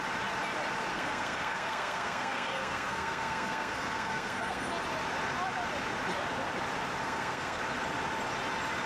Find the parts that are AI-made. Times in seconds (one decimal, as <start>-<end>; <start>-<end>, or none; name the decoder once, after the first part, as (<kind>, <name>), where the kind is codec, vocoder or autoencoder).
0.9-4.7 (codec, SNAC); 7.0-7.6